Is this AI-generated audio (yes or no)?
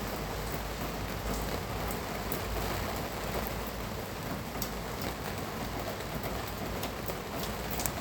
no